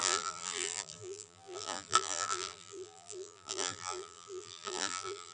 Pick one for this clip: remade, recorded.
remade